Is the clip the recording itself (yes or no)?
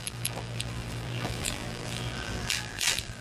no